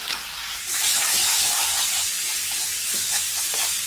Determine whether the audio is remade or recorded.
remade